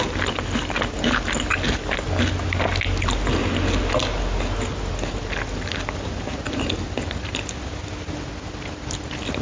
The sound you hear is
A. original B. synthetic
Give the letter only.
A